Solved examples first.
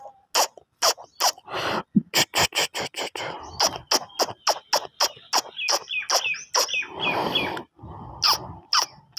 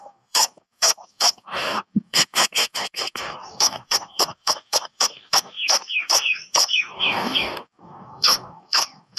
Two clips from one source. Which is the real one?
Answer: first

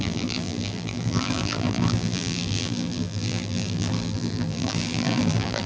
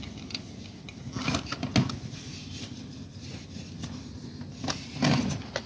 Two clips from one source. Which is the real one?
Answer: second